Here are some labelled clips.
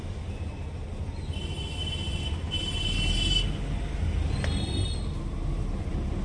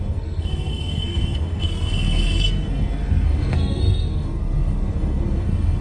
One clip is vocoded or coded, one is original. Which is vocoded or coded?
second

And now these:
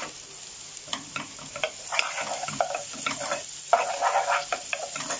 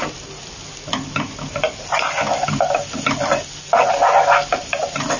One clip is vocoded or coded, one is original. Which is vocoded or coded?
first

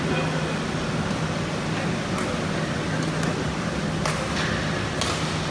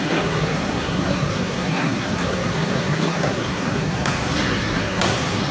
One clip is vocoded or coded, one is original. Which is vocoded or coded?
second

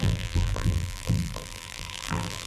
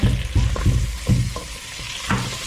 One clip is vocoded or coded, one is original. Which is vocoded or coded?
first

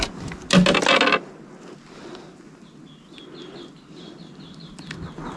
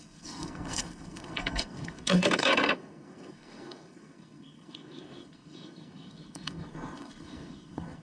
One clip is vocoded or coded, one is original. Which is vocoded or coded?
second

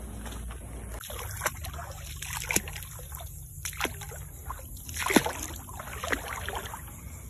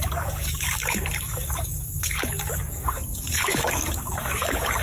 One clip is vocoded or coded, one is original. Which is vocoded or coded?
second